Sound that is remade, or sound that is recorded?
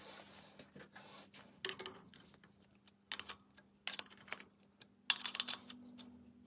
recorded